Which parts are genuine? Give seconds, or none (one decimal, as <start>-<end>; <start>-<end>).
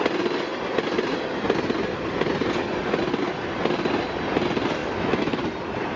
0.0-4.8; 5.4-6.0